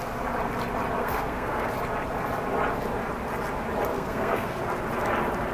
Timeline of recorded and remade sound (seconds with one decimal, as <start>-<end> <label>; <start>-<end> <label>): 0.0-1.0 recorded; 1.0-1.7 remade; 1.7-3.9 recorded; 3.9-4.6 remade; 4.6-5.5 recorded